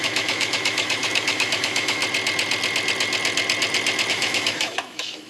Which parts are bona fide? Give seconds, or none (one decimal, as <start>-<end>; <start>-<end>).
2.0-4.1